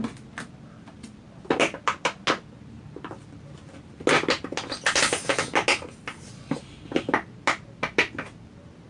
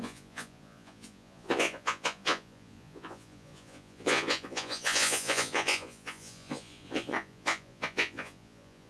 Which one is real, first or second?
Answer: first